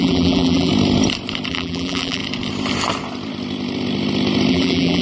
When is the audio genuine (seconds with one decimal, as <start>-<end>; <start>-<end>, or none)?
0.7-1.5; 2.2-4.5